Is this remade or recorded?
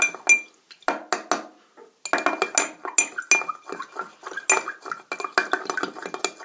recorded